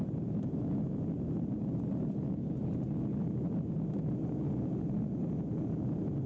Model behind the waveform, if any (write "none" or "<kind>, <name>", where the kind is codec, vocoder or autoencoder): none